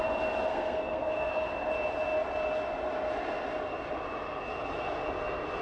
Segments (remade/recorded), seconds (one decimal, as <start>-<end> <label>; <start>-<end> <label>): 0.0-0.5 recorded; 0.5-1.3 remade; 1.3-5.6 recorded